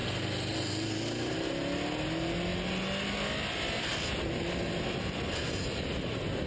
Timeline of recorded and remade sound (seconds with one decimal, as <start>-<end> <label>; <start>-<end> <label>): 0.0-6.5 recorded